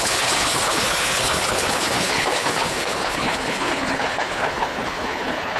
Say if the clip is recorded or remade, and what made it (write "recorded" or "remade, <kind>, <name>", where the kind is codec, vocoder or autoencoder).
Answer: remade, codec, HILCodec